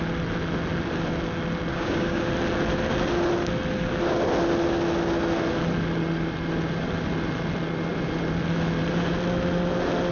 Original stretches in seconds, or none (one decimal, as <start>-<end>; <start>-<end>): 0.0-1.7; 2.2-10.1